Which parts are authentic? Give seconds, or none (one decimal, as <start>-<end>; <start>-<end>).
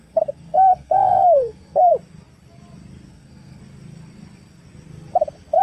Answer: 1.9-3.1; 3.6-5.6